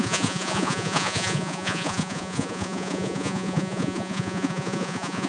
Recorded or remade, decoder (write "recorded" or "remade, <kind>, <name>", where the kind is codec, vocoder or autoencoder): remade, vocoder, Vocos